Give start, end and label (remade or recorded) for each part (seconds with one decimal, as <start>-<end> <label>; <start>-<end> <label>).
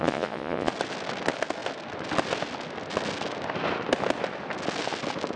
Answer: 0.0-0.7 remade; 0.7-5.4 recorded